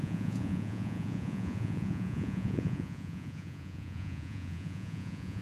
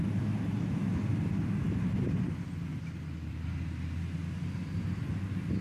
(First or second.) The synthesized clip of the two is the first